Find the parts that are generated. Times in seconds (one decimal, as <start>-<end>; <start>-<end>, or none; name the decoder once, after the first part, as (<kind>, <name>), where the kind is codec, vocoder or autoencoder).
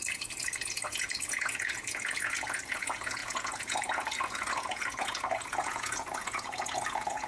0.0-7.3 (vocoder, Vocos)